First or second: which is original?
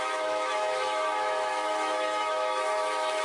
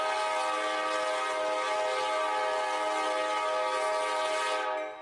second